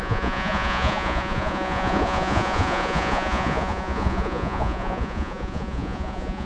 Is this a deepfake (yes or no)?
yes